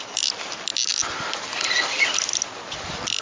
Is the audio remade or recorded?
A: recorded